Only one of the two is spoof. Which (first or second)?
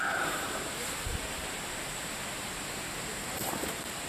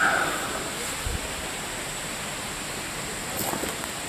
first